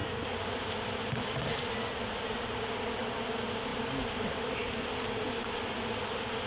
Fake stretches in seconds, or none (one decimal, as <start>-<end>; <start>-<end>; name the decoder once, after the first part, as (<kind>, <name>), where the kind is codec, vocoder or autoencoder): none